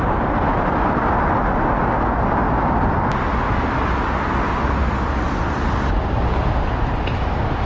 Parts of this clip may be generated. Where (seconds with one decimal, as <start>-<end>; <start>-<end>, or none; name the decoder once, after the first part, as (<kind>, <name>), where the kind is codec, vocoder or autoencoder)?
none